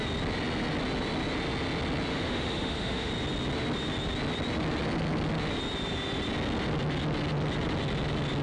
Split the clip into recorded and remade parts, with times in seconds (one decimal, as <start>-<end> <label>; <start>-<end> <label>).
0.0-2.1 recorded; 2.1-3.1 remade; 3.1-8.4 recorded